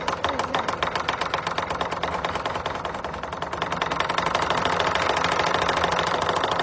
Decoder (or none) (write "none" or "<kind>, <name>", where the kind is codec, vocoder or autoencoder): none